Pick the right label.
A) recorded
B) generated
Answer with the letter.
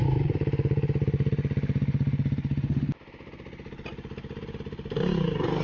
A